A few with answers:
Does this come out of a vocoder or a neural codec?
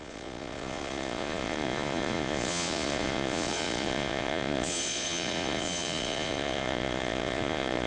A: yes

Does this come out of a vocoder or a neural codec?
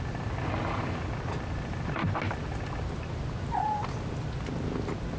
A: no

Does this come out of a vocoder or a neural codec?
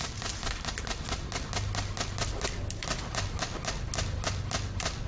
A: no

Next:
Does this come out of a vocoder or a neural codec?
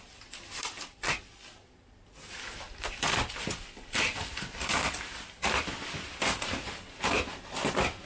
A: no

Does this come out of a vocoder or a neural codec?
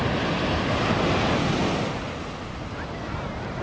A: no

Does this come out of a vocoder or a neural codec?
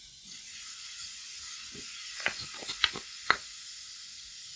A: yes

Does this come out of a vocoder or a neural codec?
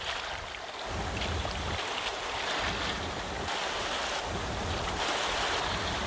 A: no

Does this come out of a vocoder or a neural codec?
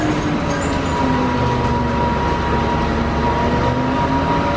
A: no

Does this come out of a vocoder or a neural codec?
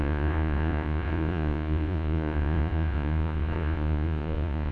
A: yes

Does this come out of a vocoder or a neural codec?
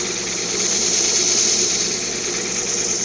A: no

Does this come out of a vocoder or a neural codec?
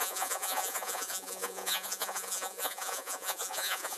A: yes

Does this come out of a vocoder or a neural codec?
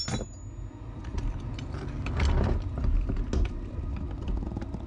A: no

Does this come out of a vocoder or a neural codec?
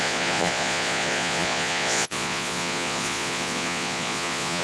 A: yes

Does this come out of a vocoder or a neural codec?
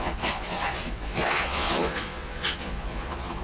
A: yes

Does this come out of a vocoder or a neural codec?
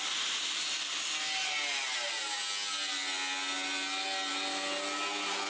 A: no